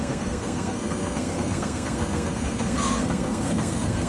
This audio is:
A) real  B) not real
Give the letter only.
B